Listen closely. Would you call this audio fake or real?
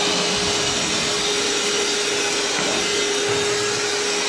real